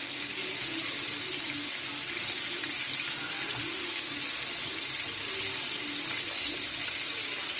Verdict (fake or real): real